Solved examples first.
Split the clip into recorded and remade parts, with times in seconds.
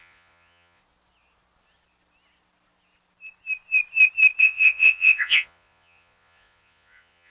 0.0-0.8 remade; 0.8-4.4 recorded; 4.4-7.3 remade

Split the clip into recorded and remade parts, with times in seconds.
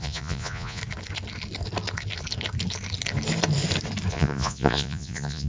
0.0-0.8 remade; 0.8-4.1 recorded; 4.1-5.5 remade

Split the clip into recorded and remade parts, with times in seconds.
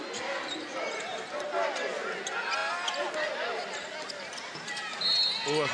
0.0-5.7 recorded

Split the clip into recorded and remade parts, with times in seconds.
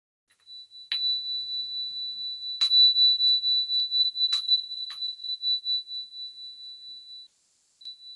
0.0-4.0 recorded; 4.0-5.4 remade; 5.4-8.2 recorded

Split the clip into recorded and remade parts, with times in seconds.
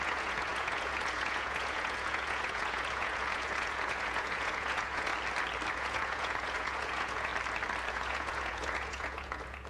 0.0-5.1 remade; 5.1-5.7 recorded; 5.7-7.3 remade; 7.3-7.9 recorded; 7.9-9.7 remade